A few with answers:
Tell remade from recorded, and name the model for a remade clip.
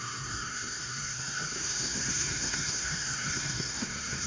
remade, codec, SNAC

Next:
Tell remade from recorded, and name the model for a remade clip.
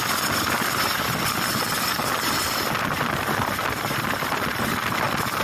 recorded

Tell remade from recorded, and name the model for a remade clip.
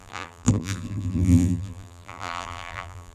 remade, vocoder, BigVGAN v2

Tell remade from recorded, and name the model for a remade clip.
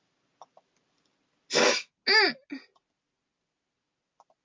recorded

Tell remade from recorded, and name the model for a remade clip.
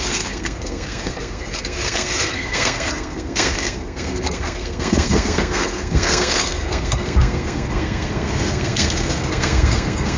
remade, codec, SNAC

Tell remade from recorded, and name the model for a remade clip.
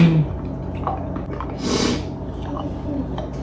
recorded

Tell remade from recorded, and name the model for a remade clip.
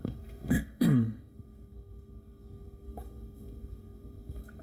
remade, codec, SNAC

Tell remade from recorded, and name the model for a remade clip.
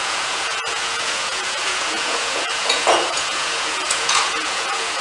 remade, vocoder, Vocos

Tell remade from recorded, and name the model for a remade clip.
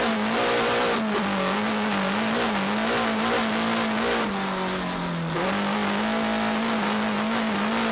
recorded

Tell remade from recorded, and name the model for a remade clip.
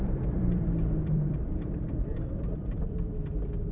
remade, vocoder, BigVGAN v2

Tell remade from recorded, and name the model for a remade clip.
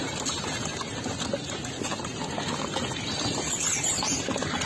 recorded